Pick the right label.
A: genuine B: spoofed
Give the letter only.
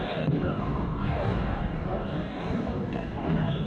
B